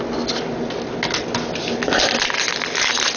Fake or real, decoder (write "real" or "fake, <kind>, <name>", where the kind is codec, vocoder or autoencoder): real